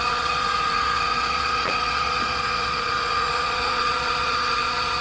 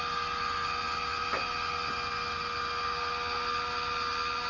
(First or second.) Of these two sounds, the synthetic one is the first